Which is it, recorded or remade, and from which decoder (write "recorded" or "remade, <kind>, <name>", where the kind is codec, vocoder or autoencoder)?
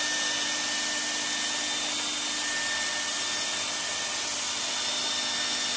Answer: recorded